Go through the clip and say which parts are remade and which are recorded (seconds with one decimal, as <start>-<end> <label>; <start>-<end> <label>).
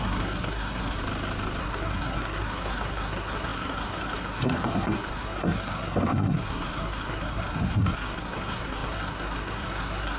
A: 0.0-1.0 remade; 1.0-1.6 recorded; 1.6-10.2 remade